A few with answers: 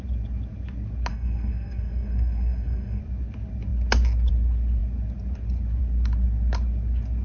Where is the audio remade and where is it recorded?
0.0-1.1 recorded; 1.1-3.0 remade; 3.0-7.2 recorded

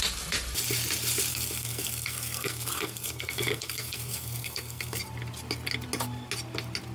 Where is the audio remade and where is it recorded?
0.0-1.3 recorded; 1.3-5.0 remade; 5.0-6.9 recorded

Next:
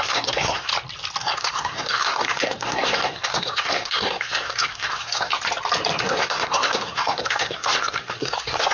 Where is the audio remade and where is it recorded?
0.0-0.7 remade; 0.7-1.2 recorded; 1.2-5.3 remade; 5.3-6.0 recorded; 6.0-8.7 remade

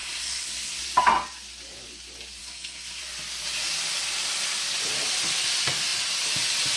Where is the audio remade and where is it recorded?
0.0-0.8 remade; 0.8-2.4 recorded; 2.4-3.0 remade; 3.0-6.8 recorded